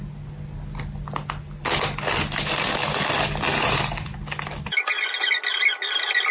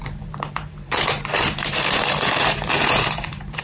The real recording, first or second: first